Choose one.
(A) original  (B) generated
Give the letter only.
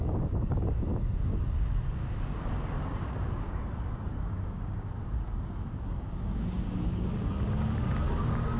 B